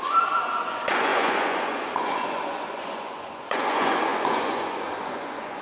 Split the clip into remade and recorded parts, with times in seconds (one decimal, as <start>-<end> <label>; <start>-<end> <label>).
0.0-5.6 remade